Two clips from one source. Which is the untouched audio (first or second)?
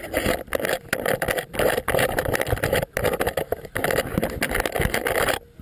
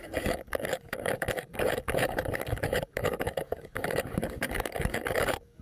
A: first